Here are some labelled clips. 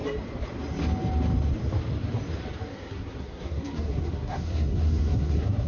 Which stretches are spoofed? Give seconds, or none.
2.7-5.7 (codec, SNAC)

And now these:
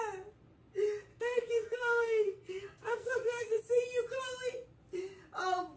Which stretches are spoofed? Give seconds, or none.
1.1-3.6 (codec, SNAC)